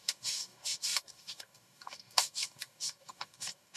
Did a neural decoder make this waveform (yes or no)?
yes